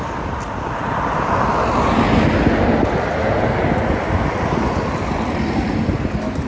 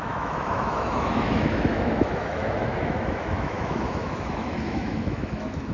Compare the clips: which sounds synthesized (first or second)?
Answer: second